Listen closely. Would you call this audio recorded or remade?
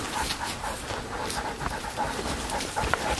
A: recorded